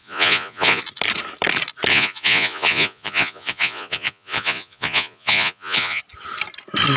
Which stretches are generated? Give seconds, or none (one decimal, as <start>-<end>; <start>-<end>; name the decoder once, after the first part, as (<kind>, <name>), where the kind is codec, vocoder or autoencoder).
0.0-0.8 (vocoder, Vocos); 1.9-6.0